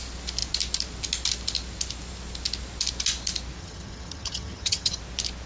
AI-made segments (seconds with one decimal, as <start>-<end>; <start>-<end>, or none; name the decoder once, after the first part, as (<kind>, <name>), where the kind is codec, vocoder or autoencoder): 3.6-5.0 (vocoder, HiFi-GAN)